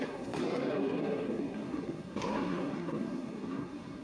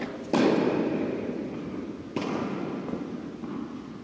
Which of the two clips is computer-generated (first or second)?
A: first